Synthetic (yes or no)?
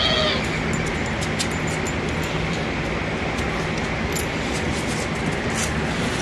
no